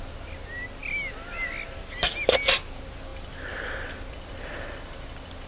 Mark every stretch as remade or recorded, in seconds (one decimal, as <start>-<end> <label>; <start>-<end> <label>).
0.0-5.5 recorded